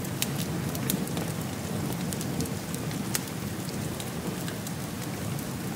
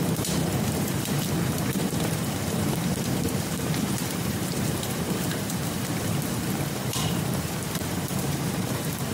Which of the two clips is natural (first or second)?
first